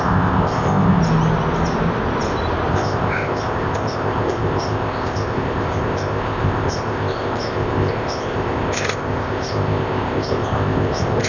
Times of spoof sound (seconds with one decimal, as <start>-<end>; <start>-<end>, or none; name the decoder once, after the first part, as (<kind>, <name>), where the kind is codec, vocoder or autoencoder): 0.0-1.0 (codec, ZipCodec); 2.7-11.3